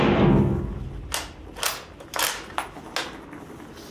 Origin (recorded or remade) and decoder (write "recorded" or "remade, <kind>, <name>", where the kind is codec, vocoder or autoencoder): recorded